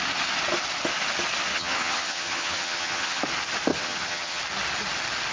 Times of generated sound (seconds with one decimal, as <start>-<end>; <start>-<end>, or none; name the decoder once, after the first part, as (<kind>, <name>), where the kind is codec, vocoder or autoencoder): 1.5-3.2 (vocoder, HiFi-GAN); 3.7-4.4